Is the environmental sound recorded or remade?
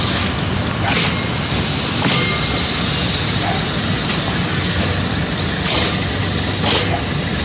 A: recorded